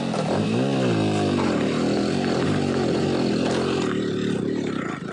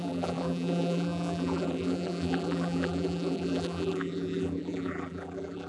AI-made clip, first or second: second